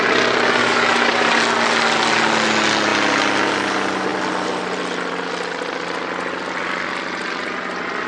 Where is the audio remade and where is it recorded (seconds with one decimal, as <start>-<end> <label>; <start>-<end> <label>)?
0.0-0.6 recorded; 0.6-1.4 remade; 1.4-8.1 recorded